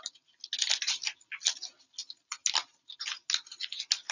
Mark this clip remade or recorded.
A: recorded